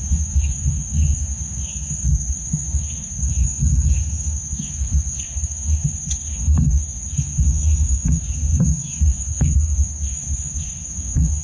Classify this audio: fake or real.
fake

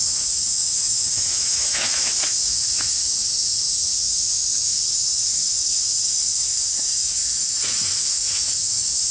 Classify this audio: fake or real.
fake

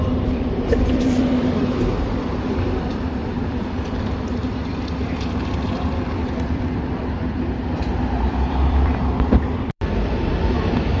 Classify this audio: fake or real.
fake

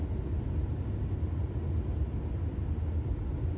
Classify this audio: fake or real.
real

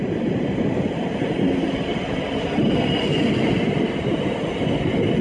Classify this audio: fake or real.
real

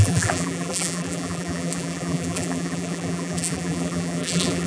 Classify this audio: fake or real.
fake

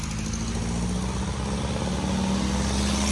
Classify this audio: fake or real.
real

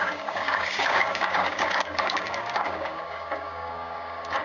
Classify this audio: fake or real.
fake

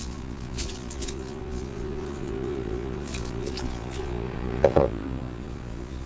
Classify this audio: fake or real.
fake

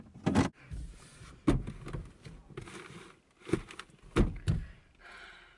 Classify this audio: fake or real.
real